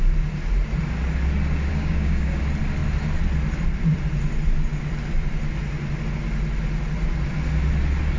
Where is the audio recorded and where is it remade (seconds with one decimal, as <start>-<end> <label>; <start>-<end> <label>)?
0.0-1.7 recorded; 1.7-2.4 remade; 2.4-8.2 recorded